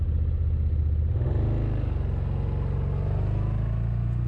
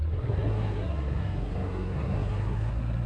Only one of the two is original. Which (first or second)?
first